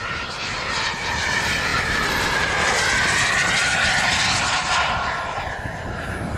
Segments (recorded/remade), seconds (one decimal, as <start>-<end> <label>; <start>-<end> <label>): 0.0-6.4 recorded